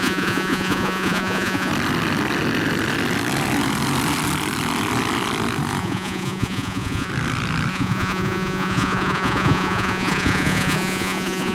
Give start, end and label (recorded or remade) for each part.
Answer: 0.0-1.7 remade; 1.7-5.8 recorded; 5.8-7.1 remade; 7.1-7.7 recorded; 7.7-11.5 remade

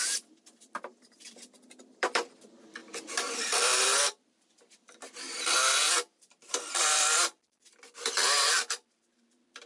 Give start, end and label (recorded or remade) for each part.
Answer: 0.0-0.6 recorded; 0.6-9.7 remade

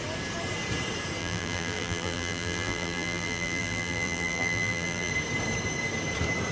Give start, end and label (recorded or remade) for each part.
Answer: 0.0-1.2 recorded; 1.2-5.1 remade; 5.1-6.5 recorded

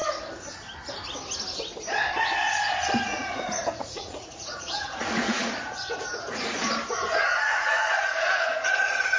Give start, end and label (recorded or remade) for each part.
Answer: 0.0-3.0 recorded; 3.0-6.6 remade; 6.6-7.1 recorded; 7.1-9.2 remade